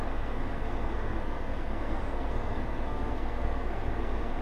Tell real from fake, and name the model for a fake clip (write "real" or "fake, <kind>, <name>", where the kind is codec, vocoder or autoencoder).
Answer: fake, codec, SNAC